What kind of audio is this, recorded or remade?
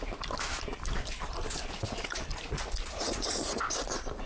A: recorded